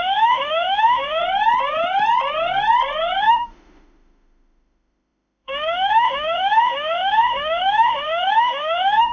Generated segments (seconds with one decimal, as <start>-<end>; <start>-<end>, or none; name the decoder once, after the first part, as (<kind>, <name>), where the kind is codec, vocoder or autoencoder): 0.0-1.2 (autoencoder, DAC-VAE); 3.2-9.1